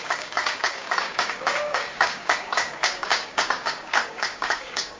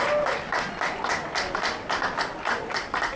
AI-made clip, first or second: first